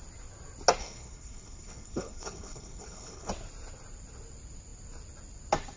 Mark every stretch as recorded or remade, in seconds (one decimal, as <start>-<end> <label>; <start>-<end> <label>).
0.0-0.8 recorded; 0.8-3.3 remade; 3.3-5.8 recorded